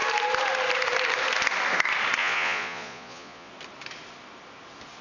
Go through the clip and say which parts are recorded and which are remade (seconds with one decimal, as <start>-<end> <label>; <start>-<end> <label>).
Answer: 0.0-2.2 recorded; 2.2-3.5 remade; 3.5-5.0 recorded